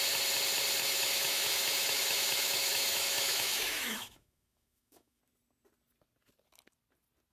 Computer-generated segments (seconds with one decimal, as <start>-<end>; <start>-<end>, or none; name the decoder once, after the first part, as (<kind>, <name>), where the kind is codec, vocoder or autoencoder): 0.8-5.2 (autoencoder, DAC-VAE)